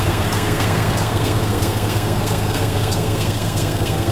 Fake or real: fake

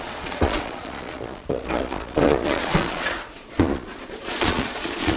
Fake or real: fake